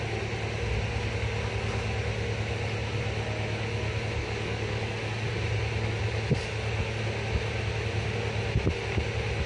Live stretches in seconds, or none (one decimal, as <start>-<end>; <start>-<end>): 0.0-4.2; 5.1-9.5